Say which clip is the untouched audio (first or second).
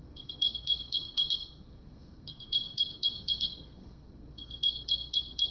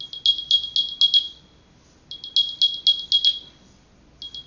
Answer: second